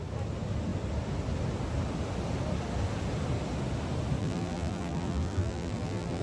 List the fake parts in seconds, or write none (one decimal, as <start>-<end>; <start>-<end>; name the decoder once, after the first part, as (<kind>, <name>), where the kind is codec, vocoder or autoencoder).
4.2-6.2 (vocoder, BigVGAN v2)